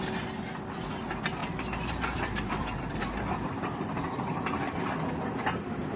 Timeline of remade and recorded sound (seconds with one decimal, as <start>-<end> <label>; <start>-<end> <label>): 0.0-1.4 recorded; 1.4-4.9 remade; 4.9-6.0 recorded